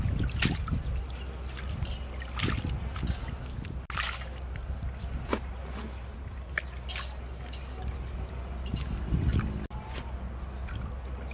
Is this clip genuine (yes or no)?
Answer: yes